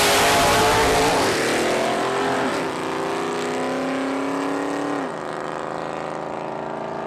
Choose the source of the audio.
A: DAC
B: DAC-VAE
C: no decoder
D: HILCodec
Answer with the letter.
C